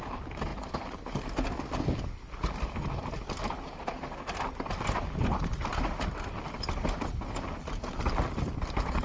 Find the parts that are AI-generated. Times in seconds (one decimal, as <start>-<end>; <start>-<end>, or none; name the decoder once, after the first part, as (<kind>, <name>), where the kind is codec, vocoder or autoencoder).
none